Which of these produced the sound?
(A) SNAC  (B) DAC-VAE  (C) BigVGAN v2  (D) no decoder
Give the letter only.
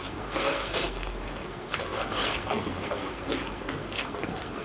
A